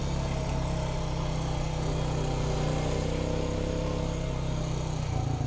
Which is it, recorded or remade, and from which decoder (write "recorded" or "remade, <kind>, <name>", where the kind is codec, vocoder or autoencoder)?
recorded